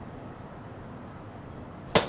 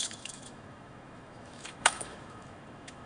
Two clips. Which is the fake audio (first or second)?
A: second